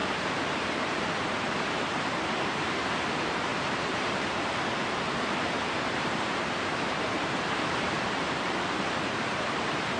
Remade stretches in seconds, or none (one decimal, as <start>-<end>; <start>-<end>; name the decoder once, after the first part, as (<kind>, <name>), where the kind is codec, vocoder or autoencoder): 0.0-10.0 (vocoder, BigVGAN v2)